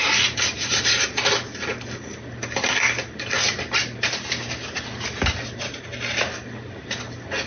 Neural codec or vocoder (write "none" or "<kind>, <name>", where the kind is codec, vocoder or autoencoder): none